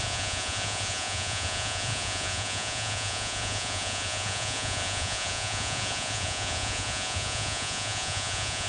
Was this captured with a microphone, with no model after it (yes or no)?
no